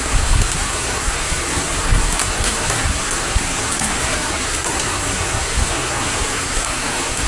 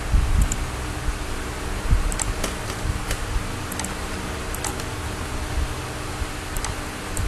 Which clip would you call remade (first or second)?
first